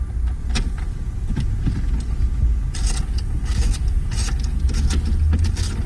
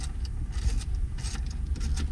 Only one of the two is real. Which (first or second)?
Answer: first